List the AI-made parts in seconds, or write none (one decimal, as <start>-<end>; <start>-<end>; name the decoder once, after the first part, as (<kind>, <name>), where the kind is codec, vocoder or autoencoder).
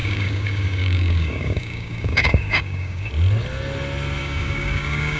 0.0-3.1 (codec, DAC); 4.2-5.2